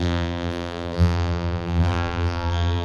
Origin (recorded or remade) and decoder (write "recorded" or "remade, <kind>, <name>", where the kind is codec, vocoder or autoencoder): remade, vocoder, BigVGAN v2